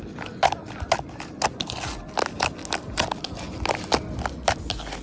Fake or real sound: real